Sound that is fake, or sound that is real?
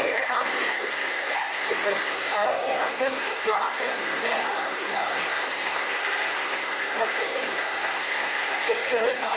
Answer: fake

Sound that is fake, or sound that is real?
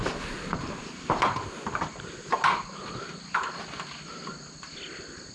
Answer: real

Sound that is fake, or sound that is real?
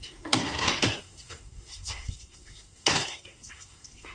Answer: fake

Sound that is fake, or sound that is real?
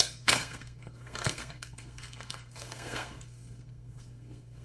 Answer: fake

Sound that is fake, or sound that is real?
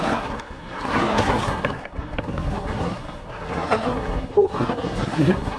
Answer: fake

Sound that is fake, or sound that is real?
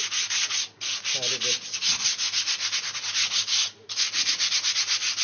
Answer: real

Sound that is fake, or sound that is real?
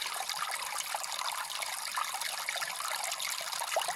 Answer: real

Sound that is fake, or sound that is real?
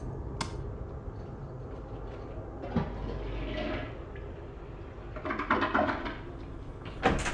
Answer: real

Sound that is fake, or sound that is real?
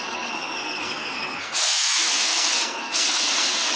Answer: fake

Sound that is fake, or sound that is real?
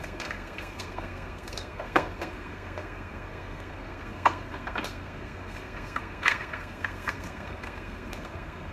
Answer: fake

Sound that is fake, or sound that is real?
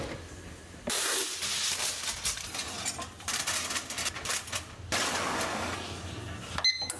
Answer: real